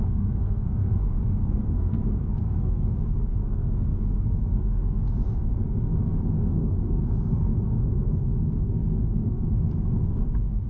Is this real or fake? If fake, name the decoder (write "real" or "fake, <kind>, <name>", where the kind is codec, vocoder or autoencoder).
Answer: fake, codec, SNAC